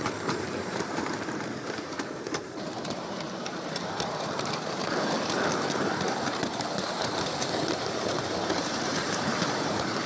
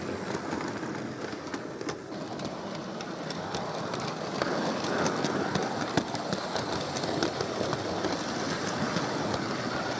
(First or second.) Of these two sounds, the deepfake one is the first